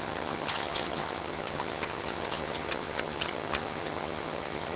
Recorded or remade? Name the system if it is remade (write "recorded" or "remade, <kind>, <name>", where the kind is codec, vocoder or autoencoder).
remade, vocoder, HiFi-GAN